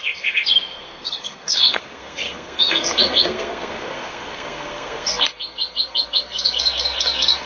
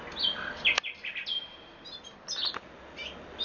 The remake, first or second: first